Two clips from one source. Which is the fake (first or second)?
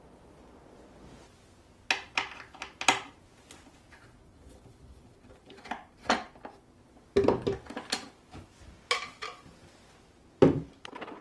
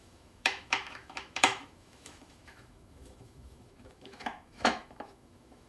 second